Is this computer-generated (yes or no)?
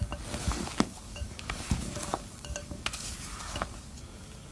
yes